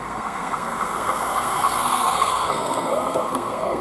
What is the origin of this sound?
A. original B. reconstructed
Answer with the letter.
B